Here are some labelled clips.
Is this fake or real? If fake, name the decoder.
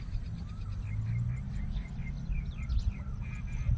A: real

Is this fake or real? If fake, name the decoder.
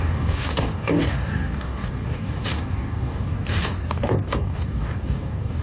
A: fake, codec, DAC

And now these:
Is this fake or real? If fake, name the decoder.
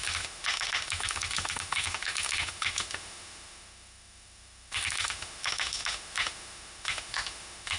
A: fake, autoencoder, DAC-VAE